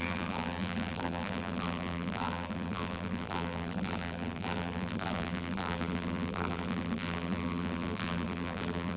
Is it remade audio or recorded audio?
remade